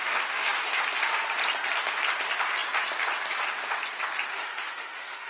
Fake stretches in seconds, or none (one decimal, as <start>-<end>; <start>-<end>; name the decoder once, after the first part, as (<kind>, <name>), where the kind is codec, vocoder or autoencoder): 0.0-0.8 (autoencoder, DAC-VAE); 4.3-5.3